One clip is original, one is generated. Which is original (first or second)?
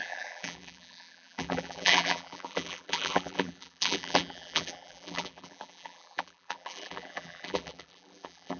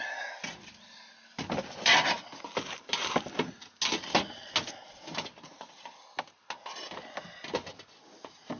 second